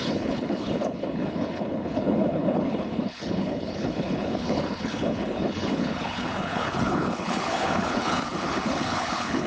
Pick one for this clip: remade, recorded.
remade